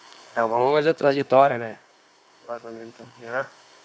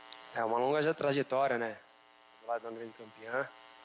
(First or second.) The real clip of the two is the second